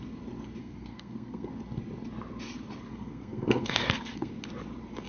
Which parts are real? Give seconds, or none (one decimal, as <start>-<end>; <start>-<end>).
0.0-0.6; 1.5-2.9; 4.3-5.1